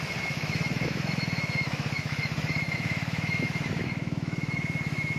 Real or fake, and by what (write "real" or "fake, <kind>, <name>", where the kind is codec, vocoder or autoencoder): fake, autoencoder, DAC-VAE